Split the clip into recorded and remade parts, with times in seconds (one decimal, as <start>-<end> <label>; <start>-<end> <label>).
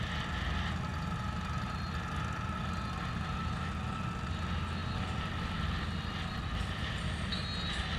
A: 0.0-4.8 recorded; 4.8-7.3 remade; 7.3-8.0 recorded